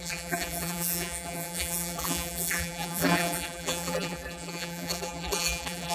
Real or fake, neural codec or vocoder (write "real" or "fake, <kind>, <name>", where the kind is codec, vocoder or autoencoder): fake, vocoder, BigVGAN v2